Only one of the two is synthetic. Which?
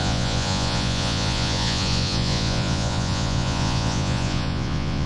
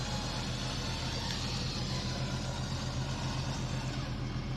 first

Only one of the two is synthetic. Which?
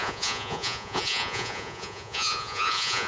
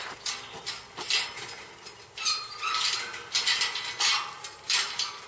first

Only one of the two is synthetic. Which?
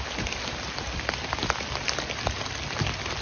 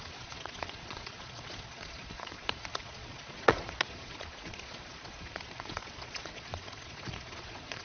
second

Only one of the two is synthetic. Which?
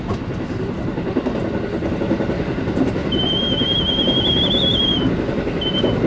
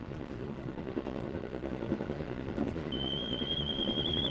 second